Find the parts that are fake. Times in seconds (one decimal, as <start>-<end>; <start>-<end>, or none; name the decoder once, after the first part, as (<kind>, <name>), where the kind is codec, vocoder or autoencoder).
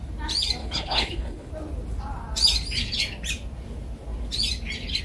0.6-1.5 (codec, HILCodec)